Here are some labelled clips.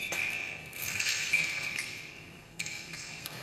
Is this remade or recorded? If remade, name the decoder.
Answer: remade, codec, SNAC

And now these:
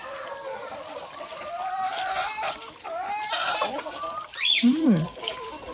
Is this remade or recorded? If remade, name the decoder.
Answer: remade, vocoder, BigVGAN v2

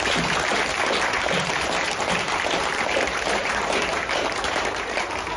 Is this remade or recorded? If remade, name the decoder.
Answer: remade, vocoder, BigVGAN v2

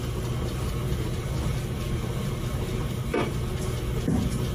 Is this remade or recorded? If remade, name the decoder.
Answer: recorded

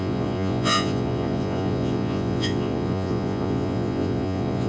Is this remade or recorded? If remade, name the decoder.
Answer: remade, vocoder, Vocos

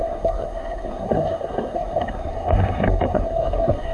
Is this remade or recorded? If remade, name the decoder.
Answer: remade, codec, SNAC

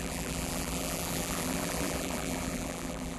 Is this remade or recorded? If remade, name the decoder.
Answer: remade, vocoder, BigVGAN v2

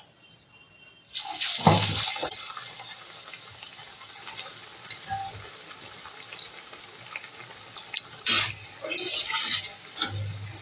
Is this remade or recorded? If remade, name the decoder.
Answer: recorded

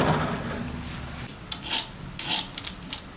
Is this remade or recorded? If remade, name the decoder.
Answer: recorded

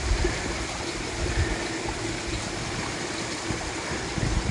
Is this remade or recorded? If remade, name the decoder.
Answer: recorded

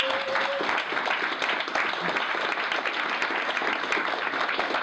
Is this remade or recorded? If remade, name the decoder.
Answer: recorded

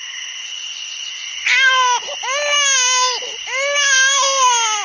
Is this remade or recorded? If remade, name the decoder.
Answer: recorded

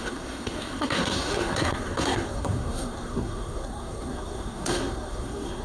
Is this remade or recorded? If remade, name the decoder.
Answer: remade, codec, SNAC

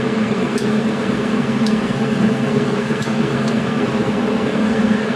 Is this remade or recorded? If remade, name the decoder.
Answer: remade, codec, SNAC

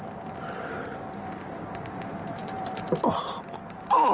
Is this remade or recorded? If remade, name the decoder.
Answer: remade, vocoder, BigVGAN v2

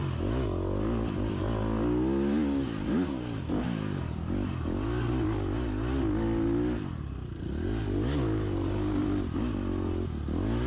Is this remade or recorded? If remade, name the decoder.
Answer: recorded